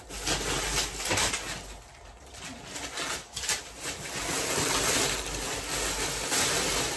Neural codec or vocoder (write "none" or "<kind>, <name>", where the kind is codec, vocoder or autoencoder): none